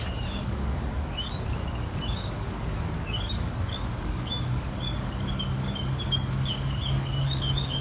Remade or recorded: remade